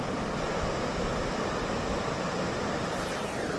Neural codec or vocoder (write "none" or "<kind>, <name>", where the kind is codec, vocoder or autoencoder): none